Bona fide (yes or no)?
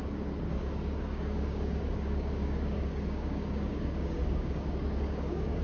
no